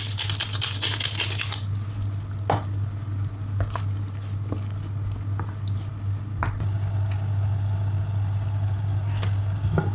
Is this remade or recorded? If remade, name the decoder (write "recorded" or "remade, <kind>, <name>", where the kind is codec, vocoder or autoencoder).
recorded